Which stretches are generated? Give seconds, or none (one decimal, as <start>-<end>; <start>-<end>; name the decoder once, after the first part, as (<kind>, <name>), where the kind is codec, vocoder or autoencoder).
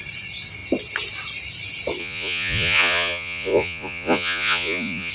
2.0-5.1 (vocoder, Vocos)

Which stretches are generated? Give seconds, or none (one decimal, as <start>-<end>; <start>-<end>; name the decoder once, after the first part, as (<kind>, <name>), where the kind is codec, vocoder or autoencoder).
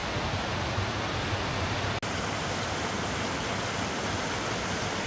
none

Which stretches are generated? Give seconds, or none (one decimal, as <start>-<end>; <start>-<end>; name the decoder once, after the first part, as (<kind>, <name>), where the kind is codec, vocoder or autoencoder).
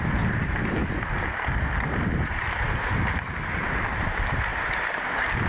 none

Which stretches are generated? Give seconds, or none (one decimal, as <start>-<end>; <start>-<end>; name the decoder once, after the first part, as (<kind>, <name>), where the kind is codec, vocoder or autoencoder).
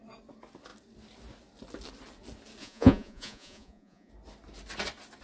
2.6-4.1 (vocoder, Vocos)